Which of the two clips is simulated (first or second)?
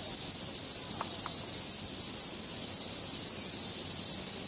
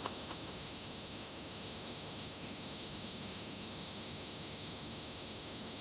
second